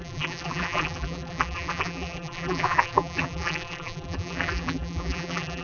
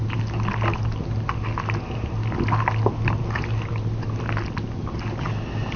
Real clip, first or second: second